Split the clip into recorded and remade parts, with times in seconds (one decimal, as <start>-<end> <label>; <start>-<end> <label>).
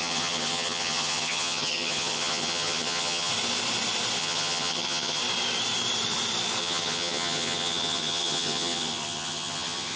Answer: 0.0-3.3 remade; 3.3-4.2 recorded; 4.2-5.2 remade; 5.2-6.6 recorded; 6.6-10.0 remade